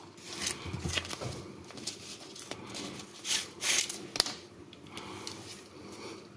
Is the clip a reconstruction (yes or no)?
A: no